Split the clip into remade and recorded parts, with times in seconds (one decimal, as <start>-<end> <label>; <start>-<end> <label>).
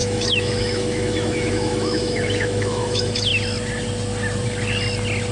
0.0-3.3 remade; 3.3-5.3 recorded